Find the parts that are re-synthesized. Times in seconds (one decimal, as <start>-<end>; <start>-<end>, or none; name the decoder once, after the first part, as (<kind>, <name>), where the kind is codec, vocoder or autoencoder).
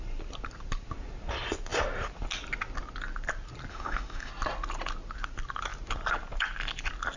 3.7-4.3 (autoencoder, DAC-VAE)